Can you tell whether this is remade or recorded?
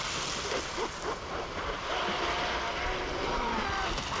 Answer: recorded